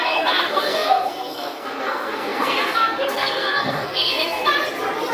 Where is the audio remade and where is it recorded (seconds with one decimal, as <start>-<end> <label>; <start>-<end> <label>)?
0.0-4.5 remade; 4.5-5.1 recorded